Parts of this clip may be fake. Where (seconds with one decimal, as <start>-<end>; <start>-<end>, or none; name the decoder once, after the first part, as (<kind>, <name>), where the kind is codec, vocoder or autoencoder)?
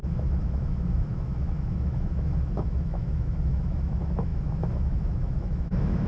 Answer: 0.0-6.1 (autoencoder, DAC-VAE)